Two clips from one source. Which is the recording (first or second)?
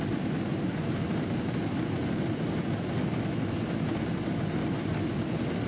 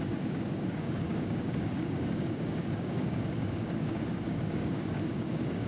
first